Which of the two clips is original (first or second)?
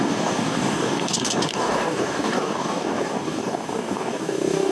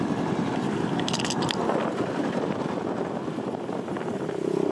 second